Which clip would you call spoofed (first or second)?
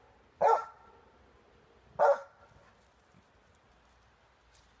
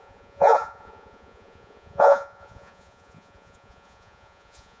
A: second